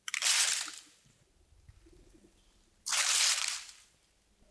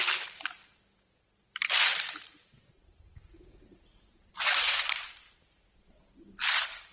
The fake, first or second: second